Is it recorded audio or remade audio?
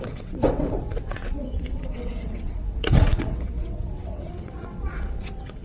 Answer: remade